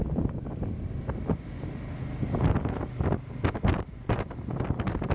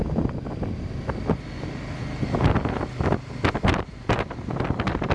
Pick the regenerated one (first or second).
first